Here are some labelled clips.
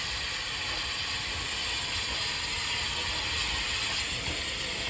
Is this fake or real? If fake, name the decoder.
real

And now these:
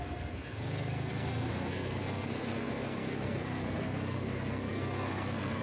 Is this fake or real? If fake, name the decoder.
fake, codec, SNAC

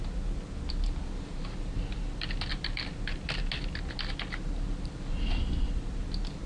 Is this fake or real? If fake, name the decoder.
real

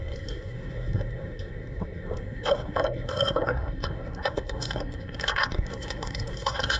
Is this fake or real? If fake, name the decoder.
fake, codec, SNAC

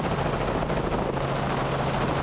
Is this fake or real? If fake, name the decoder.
real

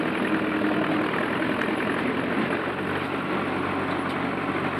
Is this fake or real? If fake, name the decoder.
real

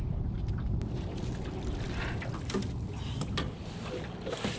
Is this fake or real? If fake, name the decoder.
real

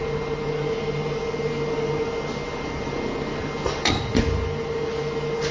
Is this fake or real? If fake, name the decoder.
real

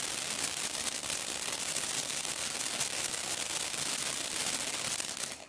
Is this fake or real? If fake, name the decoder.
real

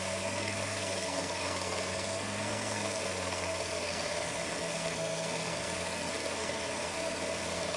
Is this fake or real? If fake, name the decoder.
fake, codec, SNAC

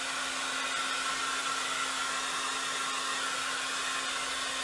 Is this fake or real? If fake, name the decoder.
real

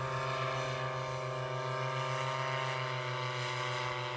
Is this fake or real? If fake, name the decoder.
real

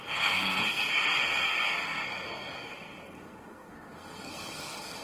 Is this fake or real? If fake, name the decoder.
fake, codec, SNAC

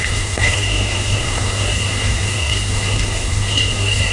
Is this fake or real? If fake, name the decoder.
fake, codec, SNAC